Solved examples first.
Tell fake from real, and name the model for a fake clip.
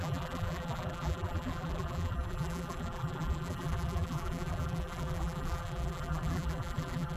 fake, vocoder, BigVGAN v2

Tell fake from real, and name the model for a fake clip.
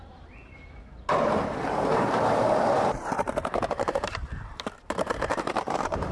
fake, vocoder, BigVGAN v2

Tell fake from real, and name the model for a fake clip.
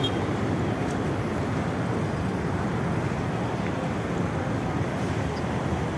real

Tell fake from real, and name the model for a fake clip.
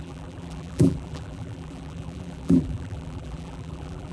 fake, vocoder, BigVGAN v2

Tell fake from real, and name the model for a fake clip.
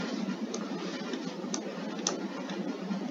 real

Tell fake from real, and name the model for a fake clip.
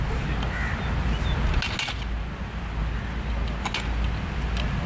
real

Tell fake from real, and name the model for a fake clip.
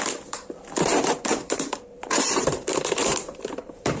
fake, vocoder, BigVGAN v2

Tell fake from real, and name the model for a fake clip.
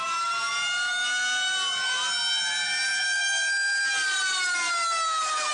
real